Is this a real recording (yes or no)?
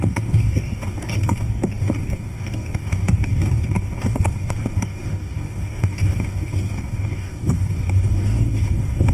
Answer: no